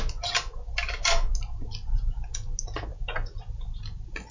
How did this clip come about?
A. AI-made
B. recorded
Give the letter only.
B